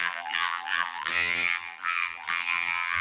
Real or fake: fake